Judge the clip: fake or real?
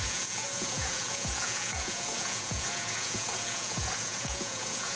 fake